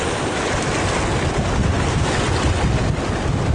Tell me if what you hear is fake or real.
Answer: real